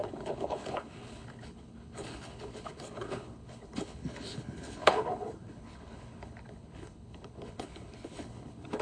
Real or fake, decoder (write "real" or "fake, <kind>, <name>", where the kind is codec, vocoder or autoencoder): fake, codec, HILCodec